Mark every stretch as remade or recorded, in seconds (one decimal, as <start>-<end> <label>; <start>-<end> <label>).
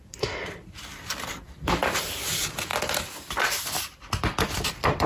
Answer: 0.0-1.8 remade; 1.8-2.3 recorded; 2.3-2.7 remade; 2.7-3.6 recorded; 3.6-5.1 remade